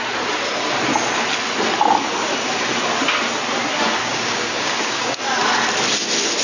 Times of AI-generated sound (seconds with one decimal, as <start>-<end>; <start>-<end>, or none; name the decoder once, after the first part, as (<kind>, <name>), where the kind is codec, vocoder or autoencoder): 4.0-5.2 (codec, DAC)